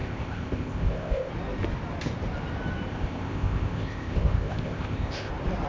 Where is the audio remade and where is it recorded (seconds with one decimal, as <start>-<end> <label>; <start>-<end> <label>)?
0.0-1.3 remade; 1.3-2.9 recorded; 2.9-5.3 remade; 5.3-5.7 recorded